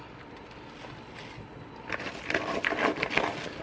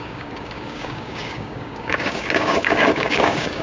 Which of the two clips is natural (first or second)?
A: first